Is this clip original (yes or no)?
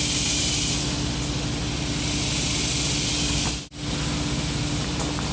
yes